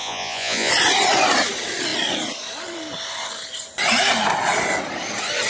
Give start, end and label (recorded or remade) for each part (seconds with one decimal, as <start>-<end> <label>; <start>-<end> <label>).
0.0-0.7 remade; 0.7-5.5 recorded